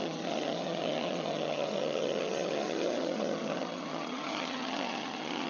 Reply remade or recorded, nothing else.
remade